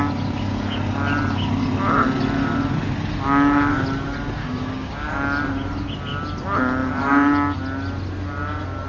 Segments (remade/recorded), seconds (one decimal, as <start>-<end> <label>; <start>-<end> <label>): 0.0-4.4 recorded; 4.4-5.1 remade; 5.1-8.9 recorded